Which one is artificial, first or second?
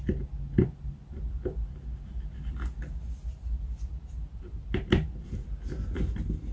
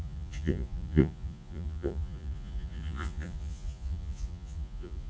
second